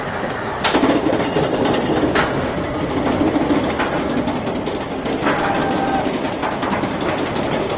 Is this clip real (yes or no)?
yes